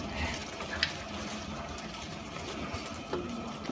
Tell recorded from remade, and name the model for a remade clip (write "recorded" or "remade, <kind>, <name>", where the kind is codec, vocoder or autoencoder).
recorded